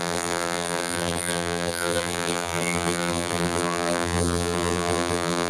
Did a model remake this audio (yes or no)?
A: yes